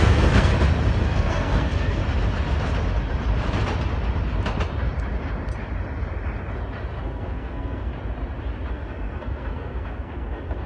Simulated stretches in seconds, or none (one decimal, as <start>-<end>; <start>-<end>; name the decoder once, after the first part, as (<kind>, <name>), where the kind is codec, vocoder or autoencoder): 0.0-0.5 (codec, SNAC); 1.0-2.0; 7.0-7.9; 8.7-10.7